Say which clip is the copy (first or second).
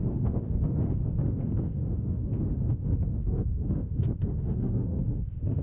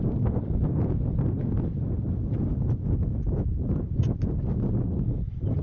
first